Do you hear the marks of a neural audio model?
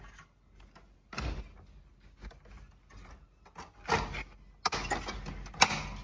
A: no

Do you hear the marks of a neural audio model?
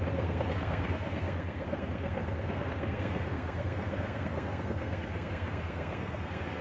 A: yes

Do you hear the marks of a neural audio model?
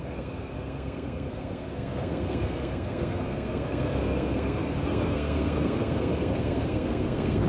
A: yes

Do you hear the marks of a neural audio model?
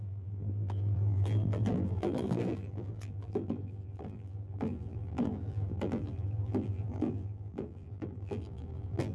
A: yes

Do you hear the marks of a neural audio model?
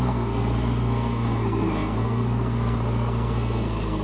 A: yes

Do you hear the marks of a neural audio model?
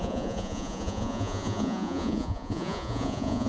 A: yes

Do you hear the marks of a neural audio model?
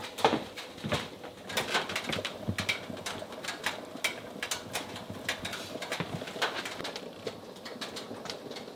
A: no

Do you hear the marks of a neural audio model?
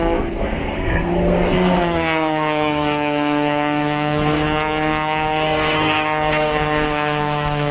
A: yes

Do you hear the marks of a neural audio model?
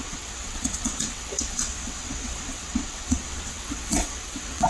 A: yes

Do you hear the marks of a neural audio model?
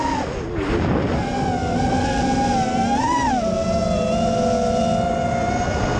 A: no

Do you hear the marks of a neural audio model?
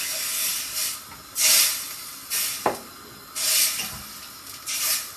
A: no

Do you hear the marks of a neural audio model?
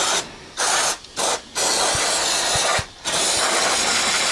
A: no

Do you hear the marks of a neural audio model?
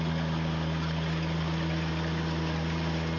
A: no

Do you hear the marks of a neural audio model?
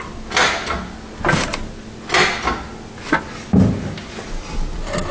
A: no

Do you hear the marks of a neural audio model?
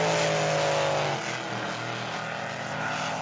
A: no